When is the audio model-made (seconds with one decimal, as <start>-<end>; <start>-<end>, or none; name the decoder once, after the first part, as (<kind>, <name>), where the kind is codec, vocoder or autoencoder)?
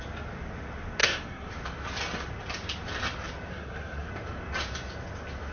1.0-1.5 (codec, SNAC); 3.5-4.1